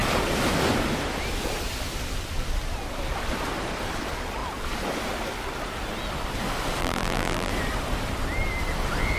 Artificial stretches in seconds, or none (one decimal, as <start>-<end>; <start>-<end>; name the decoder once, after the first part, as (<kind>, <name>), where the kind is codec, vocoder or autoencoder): 6.8-7.5 (vocoder, BigVGAN v2)